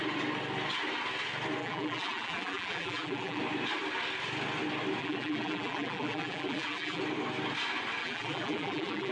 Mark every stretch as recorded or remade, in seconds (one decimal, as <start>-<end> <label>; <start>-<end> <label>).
0.0-1.6 recorded; 1.6-3.4 remade; 3.4-5.0 recorded; 5.0-7.0 remade; 7.0-8.0 recorded; 8.0-9.1 remade

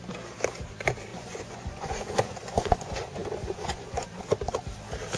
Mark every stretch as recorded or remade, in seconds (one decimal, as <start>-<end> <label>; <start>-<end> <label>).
0.0-1.1 recorded; 1.1-4.2 remade; 4.2-5.2 recorded

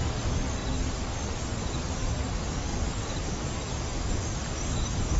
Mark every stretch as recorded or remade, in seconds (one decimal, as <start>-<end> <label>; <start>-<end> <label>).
0.0-0.6 recorded; 0.6-1.7 remade; 1.7-2.7 recorded; 2.7-3.4 remade; 3.4-5.2 recorded

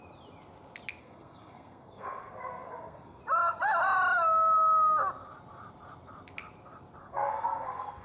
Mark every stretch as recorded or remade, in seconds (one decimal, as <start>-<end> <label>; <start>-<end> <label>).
0.0-1.0 recorded; 1.0-3.2 remade; 3.2-7.0 recorded; 7.0-8.0 remade

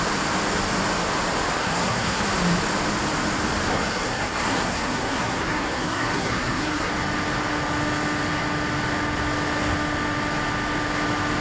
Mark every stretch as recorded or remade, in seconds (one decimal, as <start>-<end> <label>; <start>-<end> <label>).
0.0-1.6 recorded; 1.6-2.2 remade; 2.2-3.7 recorded; 3.7-6.9 remade; 6.9-11.4 recorded

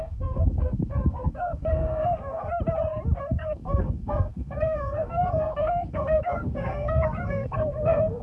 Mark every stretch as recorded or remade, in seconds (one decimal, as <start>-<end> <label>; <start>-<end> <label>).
0.0-2.5 remade; 2.5-3.2 recorded; 3.2-8.2 remade